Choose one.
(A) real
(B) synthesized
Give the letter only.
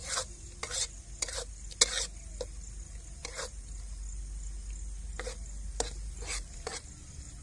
A